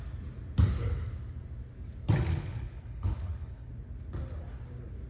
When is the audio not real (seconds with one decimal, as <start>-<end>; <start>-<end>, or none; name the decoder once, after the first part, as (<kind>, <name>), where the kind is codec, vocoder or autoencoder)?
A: 2.3-3.7 (codec, HILCodec)

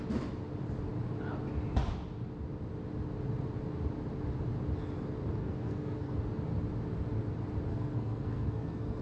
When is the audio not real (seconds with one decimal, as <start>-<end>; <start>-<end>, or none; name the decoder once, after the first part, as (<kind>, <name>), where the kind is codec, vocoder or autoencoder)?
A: 5.4-6.2 (codec, SNAC); 7.7-9.0